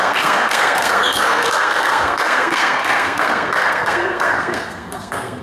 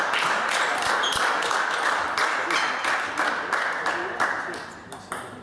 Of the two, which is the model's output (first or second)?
first